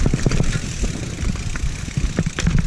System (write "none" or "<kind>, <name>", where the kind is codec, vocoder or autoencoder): none